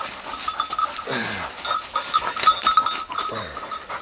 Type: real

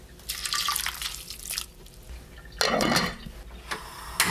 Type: real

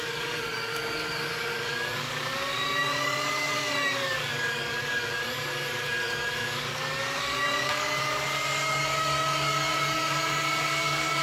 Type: fake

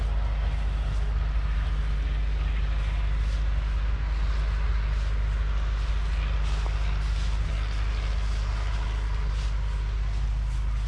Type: real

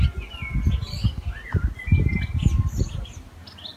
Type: real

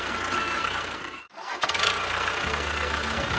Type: fake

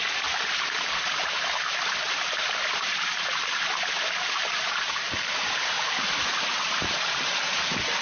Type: fake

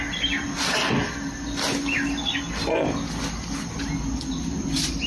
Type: real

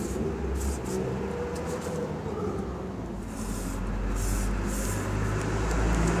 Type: real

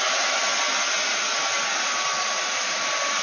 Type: real